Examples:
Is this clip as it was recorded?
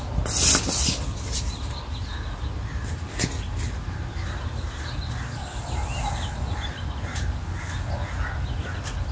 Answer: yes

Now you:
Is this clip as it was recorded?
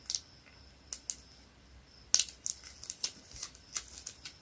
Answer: yes